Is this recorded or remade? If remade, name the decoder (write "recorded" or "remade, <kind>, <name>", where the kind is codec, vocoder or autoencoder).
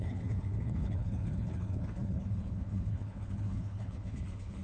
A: remade, codec, HILCodec